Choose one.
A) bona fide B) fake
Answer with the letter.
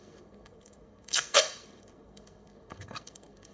B